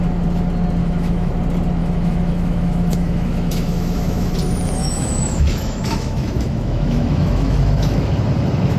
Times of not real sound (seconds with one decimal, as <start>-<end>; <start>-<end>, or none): 0.8-1.3; 1.8-4.3; 4.8-8.1